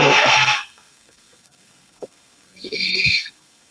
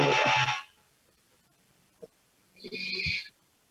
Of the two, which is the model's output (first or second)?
first